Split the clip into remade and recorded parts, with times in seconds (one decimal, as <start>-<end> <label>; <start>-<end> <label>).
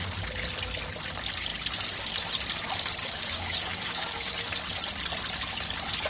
0.0-3.0 recorded; 3.0-4.4 remade; 4.4-6.1 recorded